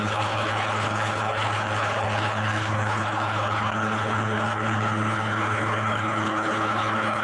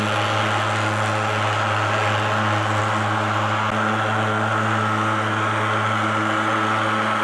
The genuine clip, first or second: second